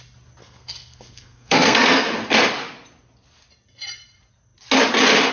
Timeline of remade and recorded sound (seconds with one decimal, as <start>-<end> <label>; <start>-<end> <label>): 0.0-0.4 recorded; 0.4-2.1 remade; 2.1-5.3 recorded